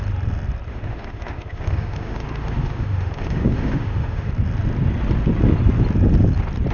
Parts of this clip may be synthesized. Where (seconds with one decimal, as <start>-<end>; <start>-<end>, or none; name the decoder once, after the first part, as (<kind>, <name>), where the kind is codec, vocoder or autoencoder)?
0.7-4.3 (autoencoder, DAC-VAE)